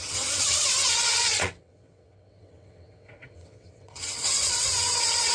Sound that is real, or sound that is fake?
fake